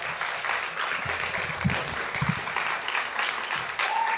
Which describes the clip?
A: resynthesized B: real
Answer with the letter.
B